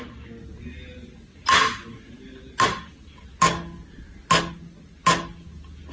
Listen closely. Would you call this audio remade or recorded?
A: recorded